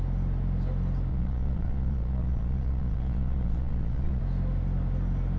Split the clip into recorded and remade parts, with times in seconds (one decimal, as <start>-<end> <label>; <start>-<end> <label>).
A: 0.0-1.1 recorded; 1.1-4.2 remade; 4.2-5.4 recorded